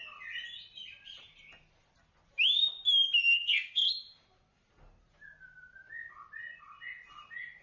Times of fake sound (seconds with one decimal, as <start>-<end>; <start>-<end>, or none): 3.3-3.9